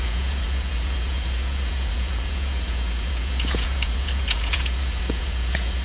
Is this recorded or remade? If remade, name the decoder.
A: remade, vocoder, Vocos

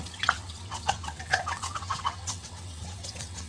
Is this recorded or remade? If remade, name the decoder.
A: remade, vocoder, WaveNeXt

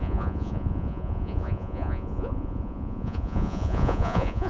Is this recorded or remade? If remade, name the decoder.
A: remade, vocoder, Vocos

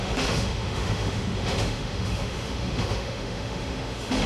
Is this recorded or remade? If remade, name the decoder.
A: remade, autoencoder, DAC-VAE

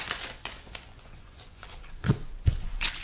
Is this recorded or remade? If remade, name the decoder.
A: remade, vocoder, Vocos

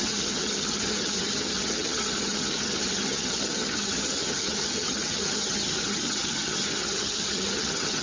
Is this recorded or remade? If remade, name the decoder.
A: remade, vocoder, HiFi-GAN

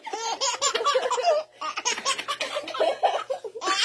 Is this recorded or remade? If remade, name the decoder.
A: recorded